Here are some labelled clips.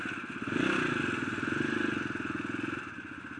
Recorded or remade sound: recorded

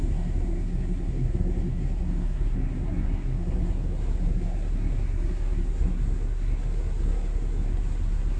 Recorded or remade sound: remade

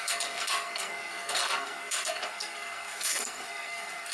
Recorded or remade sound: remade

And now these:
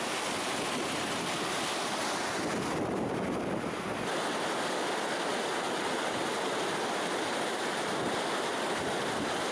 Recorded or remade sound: recorded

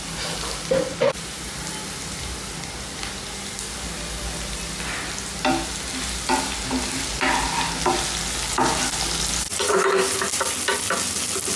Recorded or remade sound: recorded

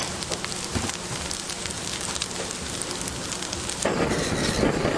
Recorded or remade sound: recorded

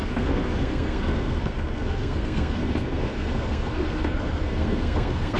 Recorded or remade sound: remade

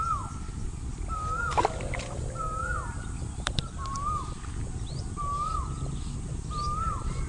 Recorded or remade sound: recorded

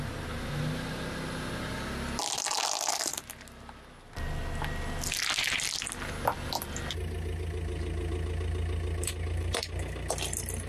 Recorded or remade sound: recorded